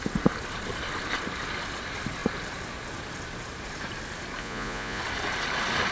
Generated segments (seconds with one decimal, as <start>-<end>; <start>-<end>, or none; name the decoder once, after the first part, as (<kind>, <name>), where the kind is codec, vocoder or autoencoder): 4.4-5.0 (vocoder, Vocos)